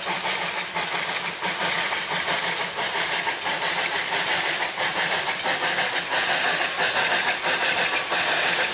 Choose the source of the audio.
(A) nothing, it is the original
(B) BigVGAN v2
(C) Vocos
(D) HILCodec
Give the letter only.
A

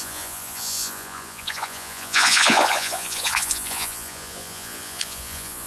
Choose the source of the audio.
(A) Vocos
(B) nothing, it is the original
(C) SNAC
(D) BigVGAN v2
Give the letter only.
A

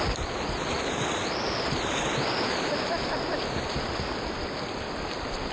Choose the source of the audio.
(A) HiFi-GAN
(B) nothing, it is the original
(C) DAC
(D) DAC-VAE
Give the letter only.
B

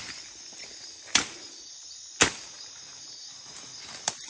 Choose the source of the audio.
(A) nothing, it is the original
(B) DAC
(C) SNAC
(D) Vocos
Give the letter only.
A